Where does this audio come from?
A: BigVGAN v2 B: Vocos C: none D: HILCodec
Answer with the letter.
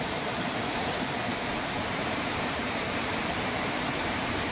A